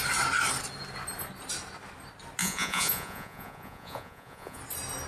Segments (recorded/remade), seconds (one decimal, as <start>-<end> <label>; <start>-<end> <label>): 0.0-2.4 recorded; 2.4-4.6 remade; 4.6-5.1 recorded